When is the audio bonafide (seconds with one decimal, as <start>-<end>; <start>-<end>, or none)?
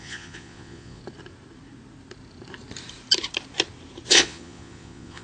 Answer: 1.0-4.1